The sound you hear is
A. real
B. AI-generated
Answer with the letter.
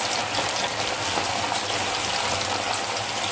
A